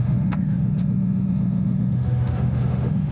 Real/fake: fake